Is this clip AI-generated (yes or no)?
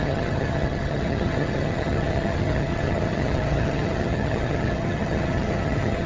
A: yes